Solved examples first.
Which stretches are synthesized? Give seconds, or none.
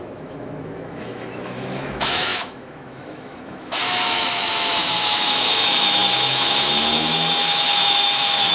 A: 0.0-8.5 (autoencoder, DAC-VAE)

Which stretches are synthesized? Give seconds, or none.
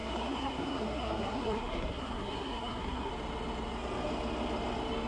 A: 0.0-3.1 (codec, SNAC)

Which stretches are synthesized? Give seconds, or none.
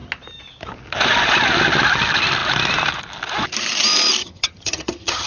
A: 4.2-5.3 (vocoder, HiFi-GAN)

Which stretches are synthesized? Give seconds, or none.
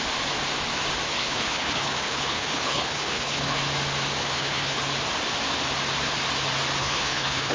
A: 1.1-3.6 (codec, HILCodec); 4.2-4.8; 6.8-7.5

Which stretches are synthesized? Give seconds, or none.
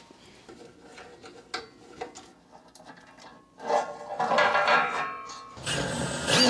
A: none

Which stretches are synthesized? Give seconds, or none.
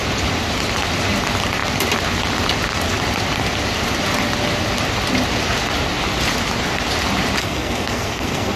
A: 7.4-8.6 (codec, SNAC)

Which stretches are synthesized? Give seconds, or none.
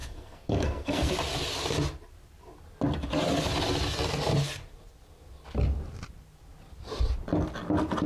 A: 0.0-1.1 (codec, SNAC)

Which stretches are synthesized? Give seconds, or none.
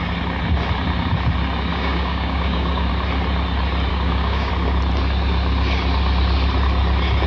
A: 1.7-2.9 (codec, DAC); 3.9-4.5